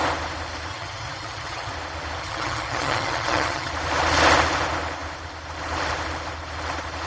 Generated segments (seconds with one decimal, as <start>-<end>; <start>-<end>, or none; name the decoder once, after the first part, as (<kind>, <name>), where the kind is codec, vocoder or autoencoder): 0.7-1.7 (vocoder, HiFi-GAN); 2.2-3.7